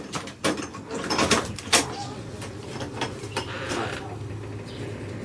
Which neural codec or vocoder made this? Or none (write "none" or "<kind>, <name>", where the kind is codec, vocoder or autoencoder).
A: vocoder, BigVGAN v2